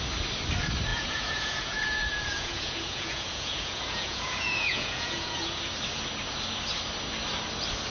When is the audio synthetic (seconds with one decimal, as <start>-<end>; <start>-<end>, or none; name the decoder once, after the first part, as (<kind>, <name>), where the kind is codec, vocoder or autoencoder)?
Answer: 0.9-5.6 (vocoder, Vocos)